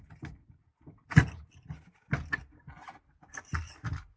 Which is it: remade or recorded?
recorded